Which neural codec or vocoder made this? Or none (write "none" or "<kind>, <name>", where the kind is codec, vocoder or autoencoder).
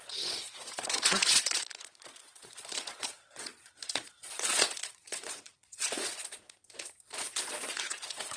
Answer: vocoder, Vocos